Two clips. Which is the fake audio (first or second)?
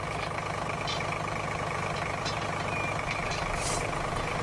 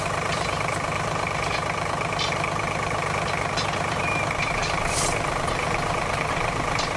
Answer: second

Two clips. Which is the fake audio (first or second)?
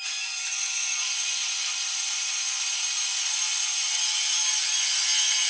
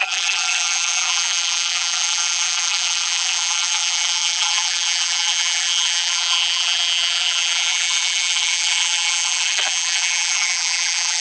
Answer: second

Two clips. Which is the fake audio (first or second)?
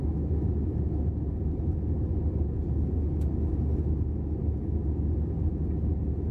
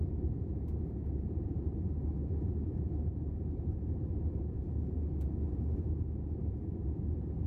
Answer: second